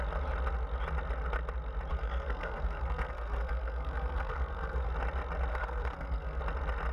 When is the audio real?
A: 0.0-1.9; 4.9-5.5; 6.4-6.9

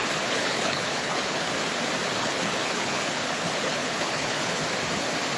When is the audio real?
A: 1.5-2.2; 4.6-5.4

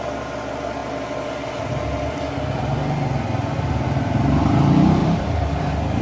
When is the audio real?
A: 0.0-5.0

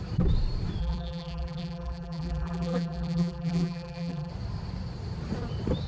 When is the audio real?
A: 0.0-0.8; 4.3-5.9